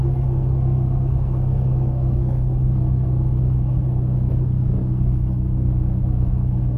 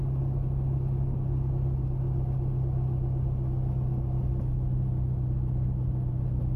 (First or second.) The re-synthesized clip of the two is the first